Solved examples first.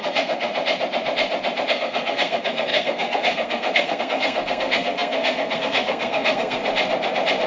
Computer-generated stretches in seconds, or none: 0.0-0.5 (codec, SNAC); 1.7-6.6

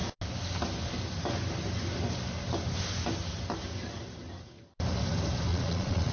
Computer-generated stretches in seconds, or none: 5.5-6.1 (vocoder, Vocos)

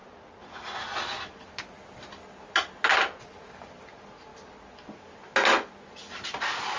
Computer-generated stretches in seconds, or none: none